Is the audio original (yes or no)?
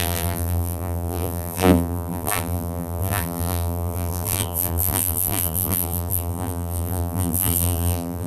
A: no